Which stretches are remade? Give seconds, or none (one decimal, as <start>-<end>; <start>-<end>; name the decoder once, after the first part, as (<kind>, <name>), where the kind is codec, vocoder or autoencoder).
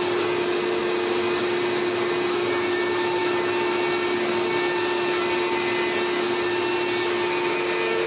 none